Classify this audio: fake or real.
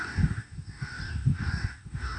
fake